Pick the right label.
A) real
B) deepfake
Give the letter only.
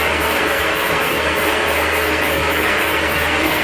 B